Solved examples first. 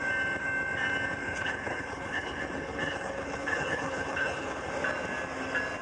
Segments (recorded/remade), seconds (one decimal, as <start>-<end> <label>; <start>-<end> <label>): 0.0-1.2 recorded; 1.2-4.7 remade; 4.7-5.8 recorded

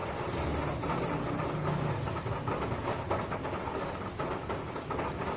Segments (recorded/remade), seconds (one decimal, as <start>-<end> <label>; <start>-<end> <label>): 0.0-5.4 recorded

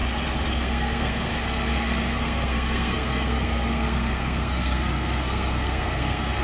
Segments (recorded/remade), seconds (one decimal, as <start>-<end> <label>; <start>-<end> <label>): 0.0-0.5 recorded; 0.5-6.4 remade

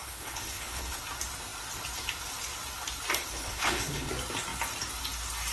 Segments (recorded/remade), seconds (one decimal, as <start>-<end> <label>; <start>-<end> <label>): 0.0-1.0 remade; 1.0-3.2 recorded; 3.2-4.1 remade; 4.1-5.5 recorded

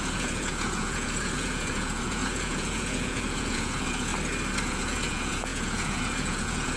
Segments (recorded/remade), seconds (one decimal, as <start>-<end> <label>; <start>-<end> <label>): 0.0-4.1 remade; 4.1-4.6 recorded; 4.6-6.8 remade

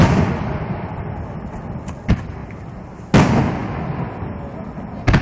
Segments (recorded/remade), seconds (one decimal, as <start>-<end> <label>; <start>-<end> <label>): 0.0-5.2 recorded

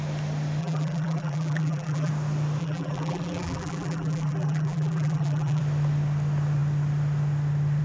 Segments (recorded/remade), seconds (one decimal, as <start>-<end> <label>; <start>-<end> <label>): 0.0-0.6 recorded; 0.6-2.1 remade; 2.1-2.6 recorded; 2.6-5.6 remade; 5.6-7.8 recorded